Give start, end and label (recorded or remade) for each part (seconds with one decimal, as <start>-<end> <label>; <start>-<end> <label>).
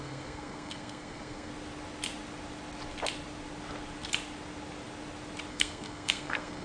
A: 0.0-1.5 remade; 1.5-5.5 recorded; 5.5-6.6 remade